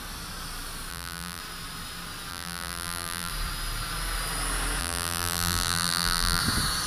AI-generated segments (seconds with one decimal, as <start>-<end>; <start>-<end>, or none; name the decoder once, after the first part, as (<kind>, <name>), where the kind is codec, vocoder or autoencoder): 0.9-1.4 (vocoder, BigVGAN v2); 2.3-3.3; 4.8-6.4